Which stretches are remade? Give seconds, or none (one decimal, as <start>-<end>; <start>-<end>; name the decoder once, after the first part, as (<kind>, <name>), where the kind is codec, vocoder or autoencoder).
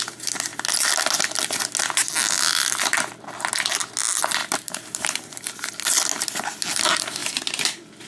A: 4.4-5.7 (vocoder, BigVGAN v2)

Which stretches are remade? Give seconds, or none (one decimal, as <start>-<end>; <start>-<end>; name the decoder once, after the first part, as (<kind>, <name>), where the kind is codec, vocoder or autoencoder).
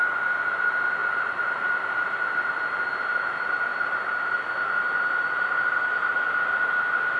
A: 1.0-2.3 (vocoder, BigVGAN v2); 3.7-4.5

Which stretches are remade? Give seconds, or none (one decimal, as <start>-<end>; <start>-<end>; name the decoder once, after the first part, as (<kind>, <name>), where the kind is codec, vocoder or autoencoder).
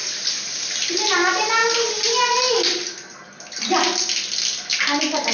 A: none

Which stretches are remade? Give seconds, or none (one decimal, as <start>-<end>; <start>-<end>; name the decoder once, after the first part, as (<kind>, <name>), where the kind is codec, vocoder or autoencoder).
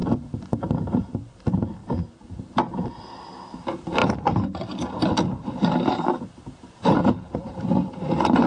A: 0.0-8.5 (vocoder, BigVGAN v2)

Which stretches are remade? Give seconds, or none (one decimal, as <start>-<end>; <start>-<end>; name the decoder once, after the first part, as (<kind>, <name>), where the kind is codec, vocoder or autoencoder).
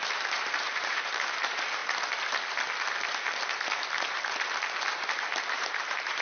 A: 0.0-1.8 (vocoder, BigVGAN v2); 5.5-6.2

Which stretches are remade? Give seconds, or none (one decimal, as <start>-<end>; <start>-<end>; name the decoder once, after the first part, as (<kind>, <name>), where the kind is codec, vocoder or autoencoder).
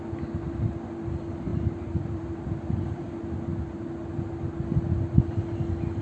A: 1.5-3.1 (vocoder, BigVGAN v2)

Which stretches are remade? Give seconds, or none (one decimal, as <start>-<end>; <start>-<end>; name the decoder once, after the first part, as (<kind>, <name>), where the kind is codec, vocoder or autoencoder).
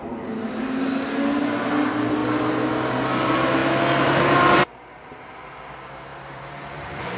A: 6.1-7.2 (vocoder, BigVGAN v2)